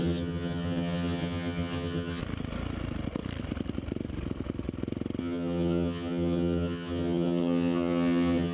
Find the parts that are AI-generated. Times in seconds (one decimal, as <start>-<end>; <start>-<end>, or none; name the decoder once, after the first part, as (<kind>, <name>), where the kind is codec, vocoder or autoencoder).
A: 0.0-2.2 (vocoder, HiFi-GAN); 5.2-8.5

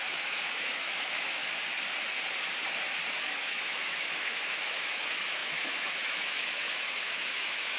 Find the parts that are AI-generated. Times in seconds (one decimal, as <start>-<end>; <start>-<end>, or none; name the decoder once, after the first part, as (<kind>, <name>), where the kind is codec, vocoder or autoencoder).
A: 0.0-1.4 (autoencoder, DAC-VAE); 3.2-7.8